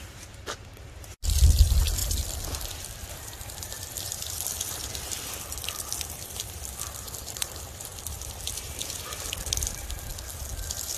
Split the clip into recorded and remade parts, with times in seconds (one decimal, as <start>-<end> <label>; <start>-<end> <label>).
0.0-7.9 remade; 7.9-8.5 recorded; 8.5-10.1 remade; 10.1-10.6 recorded; 10.6-11.0 remade

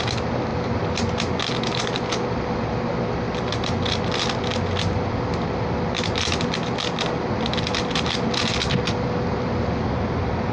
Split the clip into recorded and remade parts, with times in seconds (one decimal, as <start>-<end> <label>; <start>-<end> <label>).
0.0-10.5 recorded